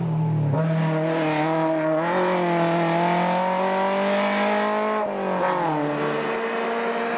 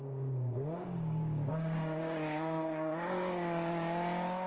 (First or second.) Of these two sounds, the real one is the first